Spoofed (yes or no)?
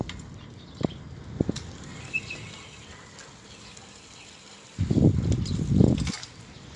no